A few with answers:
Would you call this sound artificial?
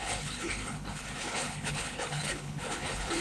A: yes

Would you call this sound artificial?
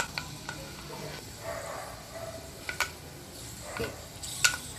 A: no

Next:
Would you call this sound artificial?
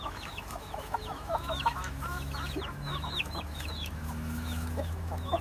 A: yes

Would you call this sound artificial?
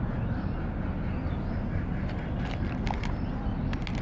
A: no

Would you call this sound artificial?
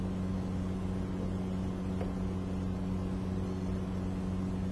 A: no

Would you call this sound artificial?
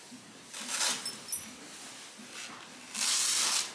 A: no